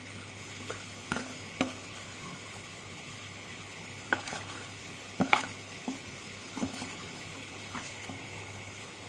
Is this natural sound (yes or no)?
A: no